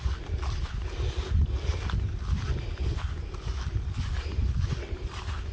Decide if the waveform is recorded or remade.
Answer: recorded